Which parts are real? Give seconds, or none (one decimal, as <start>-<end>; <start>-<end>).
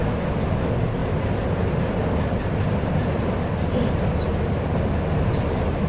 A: 0.0-1.0; 4.2-5.9